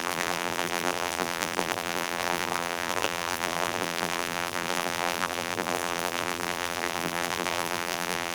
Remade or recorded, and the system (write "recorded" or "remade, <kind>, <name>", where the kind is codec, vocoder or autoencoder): remade, vocoder, BigVGAN v2